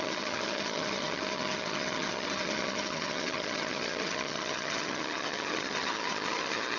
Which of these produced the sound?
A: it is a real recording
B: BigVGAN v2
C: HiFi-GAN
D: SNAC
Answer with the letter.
C